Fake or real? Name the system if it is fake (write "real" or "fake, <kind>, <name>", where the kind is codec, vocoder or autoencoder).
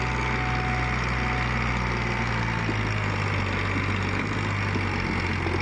real